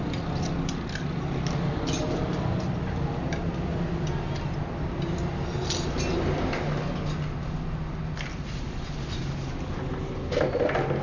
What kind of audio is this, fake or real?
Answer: real